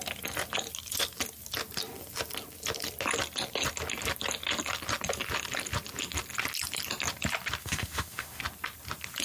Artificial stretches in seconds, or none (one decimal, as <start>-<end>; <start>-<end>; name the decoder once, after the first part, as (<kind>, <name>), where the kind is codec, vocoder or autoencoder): 7.6-8.4 (autoencoder, DAC-VAE)